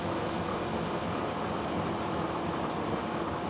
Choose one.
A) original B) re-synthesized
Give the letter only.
A